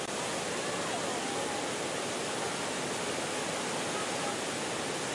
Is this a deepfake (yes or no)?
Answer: no